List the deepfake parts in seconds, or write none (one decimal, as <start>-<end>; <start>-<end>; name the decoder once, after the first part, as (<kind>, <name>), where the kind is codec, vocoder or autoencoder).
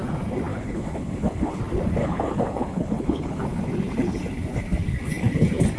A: 0.5-1.6 (codec, HILCodec); 2.0-3.4